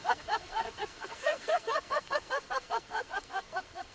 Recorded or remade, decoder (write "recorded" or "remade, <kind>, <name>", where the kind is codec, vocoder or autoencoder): remade, codec, SNAC